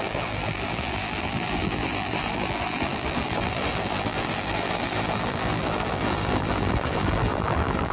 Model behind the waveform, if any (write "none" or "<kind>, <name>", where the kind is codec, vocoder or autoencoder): vocoder, BigVGAN v2